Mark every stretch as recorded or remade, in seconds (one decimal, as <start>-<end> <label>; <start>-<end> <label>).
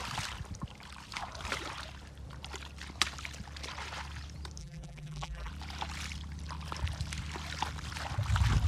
0.0-4.6 recorded; 4.6-5.5 remade; 5.5-8.7 recorded